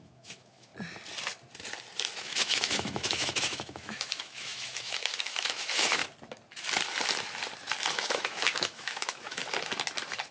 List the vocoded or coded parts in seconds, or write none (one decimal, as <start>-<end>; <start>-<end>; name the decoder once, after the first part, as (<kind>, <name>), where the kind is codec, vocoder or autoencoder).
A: 0.0-0.7 (autoencoder, DAC-VAE); 2.2-6.0; 7.9-9.4